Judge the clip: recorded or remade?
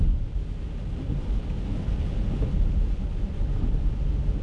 recorded